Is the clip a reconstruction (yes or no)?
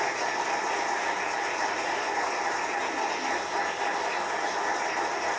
no